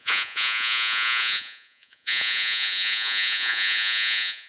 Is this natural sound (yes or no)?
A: no